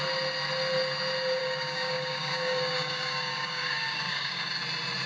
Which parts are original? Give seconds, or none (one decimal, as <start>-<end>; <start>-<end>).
0.0-1.4; 4.5-5.1